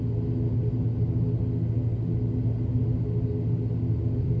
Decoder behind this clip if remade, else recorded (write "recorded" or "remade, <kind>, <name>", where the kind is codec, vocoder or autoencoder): recorded